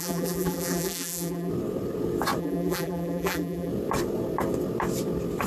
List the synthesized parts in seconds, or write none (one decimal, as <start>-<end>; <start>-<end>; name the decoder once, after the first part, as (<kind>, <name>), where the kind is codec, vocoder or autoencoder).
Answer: 0.0-1.5 (vocoder, BigVGAN v2); 2.4-3.7